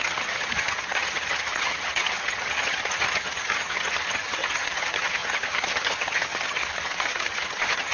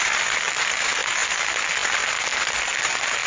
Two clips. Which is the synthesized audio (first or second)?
first